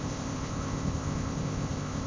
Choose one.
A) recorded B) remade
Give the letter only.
B